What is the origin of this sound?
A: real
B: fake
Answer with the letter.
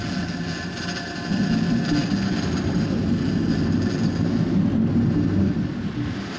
A